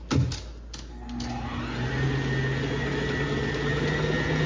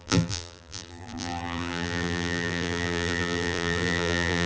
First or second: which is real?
first